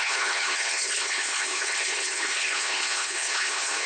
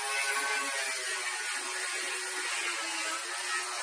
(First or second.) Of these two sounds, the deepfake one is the first